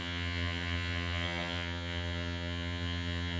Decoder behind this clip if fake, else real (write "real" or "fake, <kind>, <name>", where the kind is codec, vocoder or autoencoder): fake, vocoder, HiFi-GAN